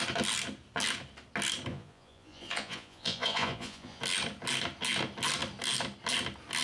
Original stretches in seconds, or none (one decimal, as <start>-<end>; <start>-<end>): 0.0-1.7; 4.0-6.6